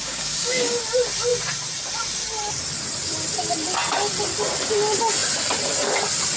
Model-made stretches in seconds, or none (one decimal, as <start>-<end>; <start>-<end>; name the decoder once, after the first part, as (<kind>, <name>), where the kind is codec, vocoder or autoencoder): 0.0-0.8 (codec, DAC)